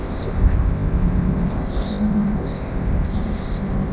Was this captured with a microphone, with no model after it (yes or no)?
no